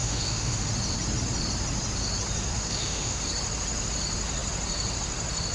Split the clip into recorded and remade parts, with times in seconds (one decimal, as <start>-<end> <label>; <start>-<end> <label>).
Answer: 0.0-0.7 remade; 0.7-2.5 recorded; 2.5-3.2 remade; 3.2-5.5 recorded